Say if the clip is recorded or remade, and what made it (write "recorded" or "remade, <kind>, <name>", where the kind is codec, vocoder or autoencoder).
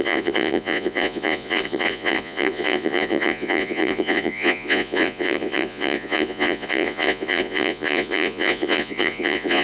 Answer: remade, vocoder, Vocos